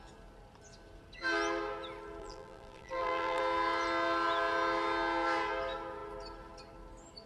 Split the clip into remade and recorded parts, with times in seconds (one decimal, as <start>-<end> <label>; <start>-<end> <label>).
0.0-2.2 recorded; 2.2-3.4 remade; 3.4-7.3 recorded

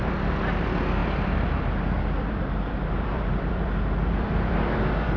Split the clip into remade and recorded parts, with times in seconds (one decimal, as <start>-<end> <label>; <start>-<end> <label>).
0.0-5.2 remade